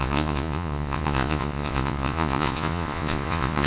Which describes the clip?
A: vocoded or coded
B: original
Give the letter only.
A